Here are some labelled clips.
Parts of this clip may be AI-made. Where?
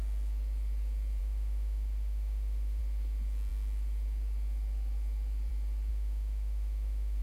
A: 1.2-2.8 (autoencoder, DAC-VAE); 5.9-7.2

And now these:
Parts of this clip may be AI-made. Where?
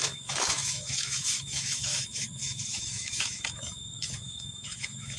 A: 0.0-5.2 (autoencoder, DAC-VAE)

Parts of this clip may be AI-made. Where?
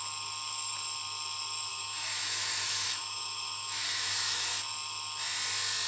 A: 1.7-4.5 (autoencoder, DAC-VAE)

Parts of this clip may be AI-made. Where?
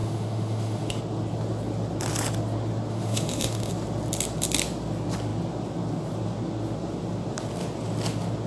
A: 0.0-1.0 (autoencoder, DAC-VAE); 2.9-3.7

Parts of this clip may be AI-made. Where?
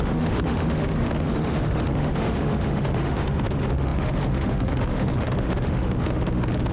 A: 0.0-6.7 (autoencoder, DAC-VAE)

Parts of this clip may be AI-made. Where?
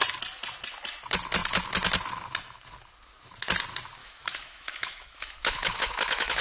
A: 4.0-6.4 (autoencoder, DAC-VAE)